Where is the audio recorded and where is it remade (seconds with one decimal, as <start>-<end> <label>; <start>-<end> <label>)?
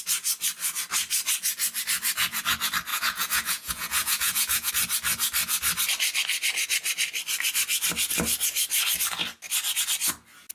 0.0-2.9 recorded; 2.9-4.7 remade; 4.7-10.5 recorded